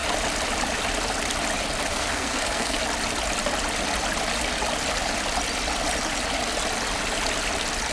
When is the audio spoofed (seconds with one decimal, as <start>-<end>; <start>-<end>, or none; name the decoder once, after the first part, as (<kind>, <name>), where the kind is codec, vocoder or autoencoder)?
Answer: 1.9-2.8 (codec, SNAC)